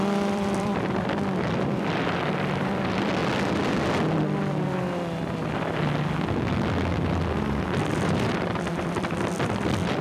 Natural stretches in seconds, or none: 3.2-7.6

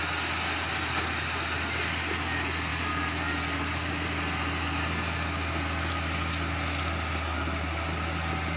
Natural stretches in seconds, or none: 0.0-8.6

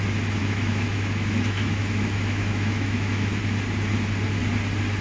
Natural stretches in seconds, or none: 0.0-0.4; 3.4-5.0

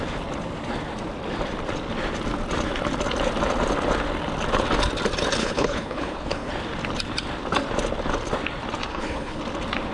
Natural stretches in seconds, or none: 0.0-5.4; 6.5-8.9; 9.4-9.9

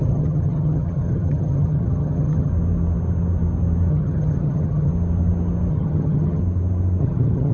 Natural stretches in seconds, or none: 2.5-3.9; 4.9-5.7; 6.4-7.0

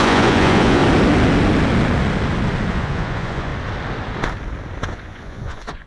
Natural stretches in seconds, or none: 0.8-2.7; 3.5-4.9